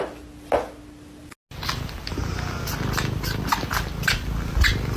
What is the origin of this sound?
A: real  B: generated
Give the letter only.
A